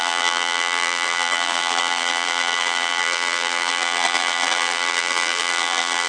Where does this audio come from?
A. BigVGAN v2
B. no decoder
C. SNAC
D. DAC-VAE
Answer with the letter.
A